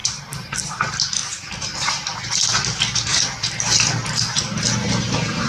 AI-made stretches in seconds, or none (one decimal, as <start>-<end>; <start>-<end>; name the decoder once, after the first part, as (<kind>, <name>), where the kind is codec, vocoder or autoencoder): 0.0-0.5 (vocoder, BigVGAN v2)